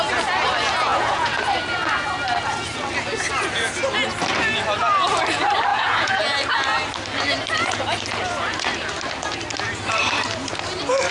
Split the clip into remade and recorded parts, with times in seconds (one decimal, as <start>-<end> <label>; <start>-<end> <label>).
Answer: 0.0-0.9 recorded; 0.9-1.4 remade; 1.4-5.7 recorded; 5.7-6.2 remade; 6.2-11.1 recorded